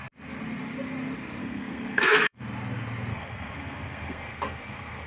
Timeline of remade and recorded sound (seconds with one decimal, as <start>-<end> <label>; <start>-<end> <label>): 0.0-1.4 recorded; 1.4-2.4 remade; 2.4-3.1 recorded; 3.1-5.1 remade